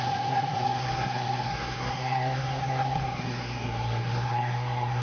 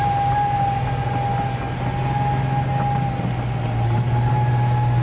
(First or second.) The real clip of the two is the second